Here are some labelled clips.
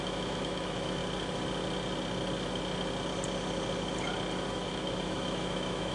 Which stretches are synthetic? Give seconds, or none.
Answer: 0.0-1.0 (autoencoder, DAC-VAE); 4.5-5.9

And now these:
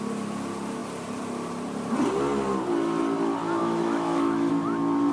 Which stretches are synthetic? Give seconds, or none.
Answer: 3.6-4.5 (autoencoder, DAC-VAE)

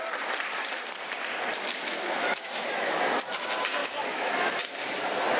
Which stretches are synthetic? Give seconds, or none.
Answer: 1.8-3.0 (autoencoder, DAC-VAE); 3.8-4.3

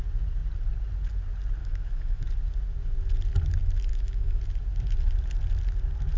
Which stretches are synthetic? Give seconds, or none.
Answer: 1.6-2.2 (autoencoder, DAC-VAE); 3.9-4.4

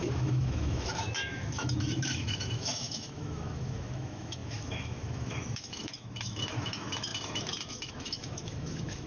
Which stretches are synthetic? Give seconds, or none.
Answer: 0.0-9.1 (autoencoder, DAC-VAE)